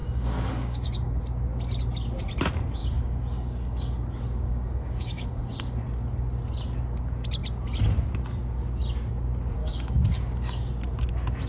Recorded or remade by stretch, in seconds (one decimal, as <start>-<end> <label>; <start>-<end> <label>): 0.0-1.2 remade; 1.2-2.8 recorded; 2.8-5.8 remade; 5.8-9.6 recorded; 9.6-10.7 remade; 10.7-11.5 recorded